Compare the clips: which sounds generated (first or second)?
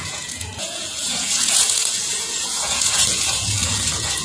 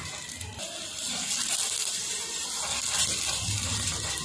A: first